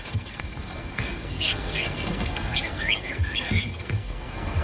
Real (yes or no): no